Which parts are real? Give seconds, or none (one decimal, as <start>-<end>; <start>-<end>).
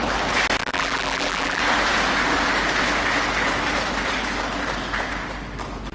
0.0-0.6; 1.6-5.9